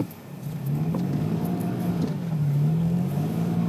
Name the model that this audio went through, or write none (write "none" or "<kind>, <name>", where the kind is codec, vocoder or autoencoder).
codec, DAC